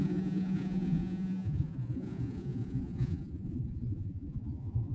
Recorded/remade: remade